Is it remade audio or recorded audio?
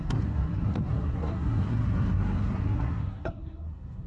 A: remade